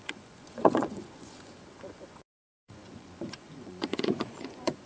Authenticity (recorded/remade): remade